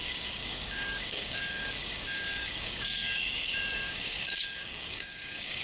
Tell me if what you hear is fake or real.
fake